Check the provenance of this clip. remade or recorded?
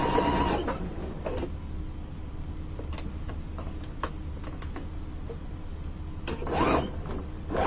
recorded